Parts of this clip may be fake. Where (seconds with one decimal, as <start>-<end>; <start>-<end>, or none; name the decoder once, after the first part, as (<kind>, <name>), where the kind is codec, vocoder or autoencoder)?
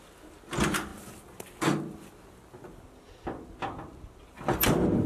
none